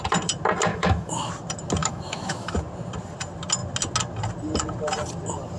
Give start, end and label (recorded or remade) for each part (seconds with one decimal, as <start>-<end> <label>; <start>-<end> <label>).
0.0-0.7 recorded; 0.7-1.3 remade; 1.3-1.8 recorded; 1.8-2.5 remade; 2.5-5.6 recorded

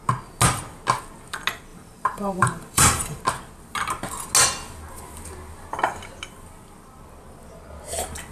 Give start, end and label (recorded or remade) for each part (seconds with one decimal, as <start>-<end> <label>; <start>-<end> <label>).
0.0-1.7 recorded; 1.7-3.2 remade; 3.2-8.3 recorded

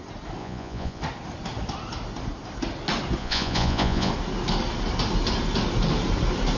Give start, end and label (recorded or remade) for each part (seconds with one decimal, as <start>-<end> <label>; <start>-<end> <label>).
0.0-0.4 recorded; 0.4-1.0 remade; 1.0-3.2 recorded; 3.2-4.1 remade; 4.1-6.6 recorded

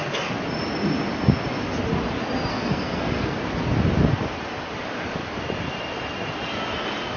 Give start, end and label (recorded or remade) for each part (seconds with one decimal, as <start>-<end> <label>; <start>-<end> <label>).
0.0-2.5 recorded; 2.5-3.4 remade; 3.4-7.2 recorded

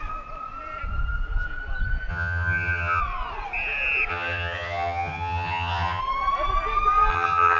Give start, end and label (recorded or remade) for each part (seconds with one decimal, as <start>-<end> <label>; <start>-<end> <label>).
0.0-2.1 recorded; 2.1-3.0 remade; 3.0-4.1 recorded; 4.1-6.0 remade; 6.0-7.1 recorded; 7.1-7.6 remade

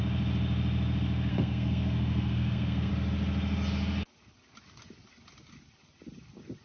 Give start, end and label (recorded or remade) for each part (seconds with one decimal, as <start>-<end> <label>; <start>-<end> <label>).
0.0-1.3 recorded; 1.3-2.9 remade; 2.9-6.6 recorded